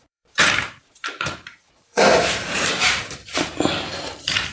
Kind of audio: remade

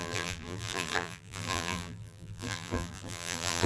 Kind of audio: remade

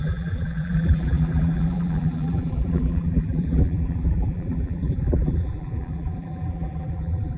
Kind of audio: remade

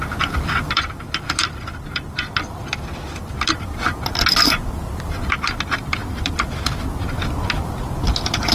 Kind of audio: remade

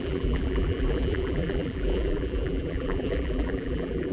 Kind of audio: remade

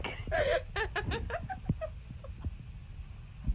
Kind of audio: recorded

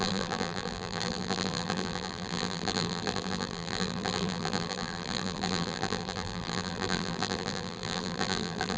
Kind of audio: remade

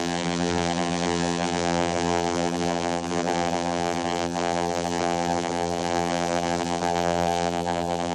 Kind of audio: remade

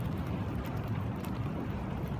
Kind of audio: remade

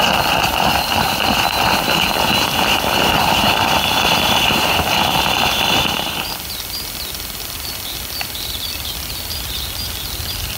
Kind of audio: remade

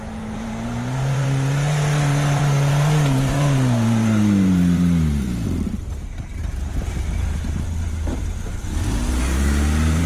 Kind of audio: remade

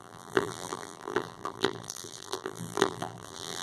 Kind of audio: remade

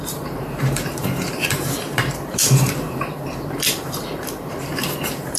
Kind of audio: remade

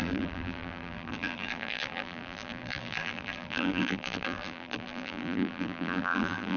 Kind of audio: remade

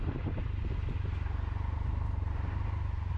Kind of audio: recorded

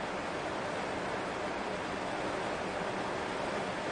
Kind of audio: recorded